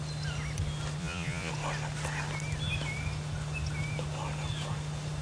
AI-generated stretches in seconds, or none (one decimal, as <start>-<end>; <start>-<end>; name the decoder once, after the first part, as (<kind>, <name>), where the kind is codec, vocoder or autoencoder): 1.0-1.5 (vocoder, Vocos)